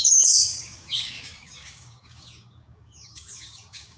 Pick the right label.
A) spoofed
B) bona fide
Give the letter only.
A